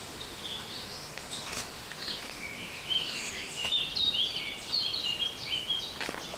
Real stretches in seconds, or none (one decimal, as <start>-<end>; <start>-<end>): 3.8-6.4